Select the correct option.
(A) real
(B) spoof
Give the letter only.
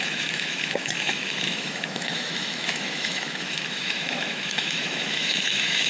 B